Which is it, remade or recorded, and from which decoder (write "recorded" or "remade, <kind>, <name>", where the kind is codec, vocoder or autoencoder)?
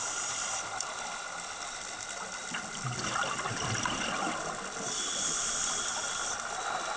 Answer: recorded